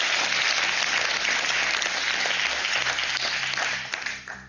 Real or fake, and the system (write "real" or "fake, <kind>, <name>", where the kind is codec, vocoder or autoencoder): real